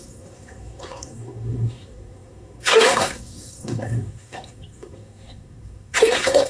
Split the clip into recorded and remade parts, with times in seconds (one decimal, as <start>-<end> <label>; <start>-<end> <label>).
0.0-6.5 remade